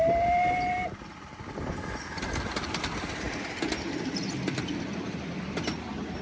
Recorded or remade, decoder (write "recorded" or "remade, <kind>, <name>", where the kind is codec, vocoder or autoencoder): recorded